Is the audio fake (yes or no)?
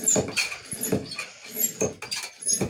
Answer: no